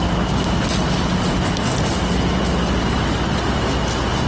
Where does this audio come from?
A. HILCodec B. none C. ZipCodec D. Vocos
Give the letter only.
B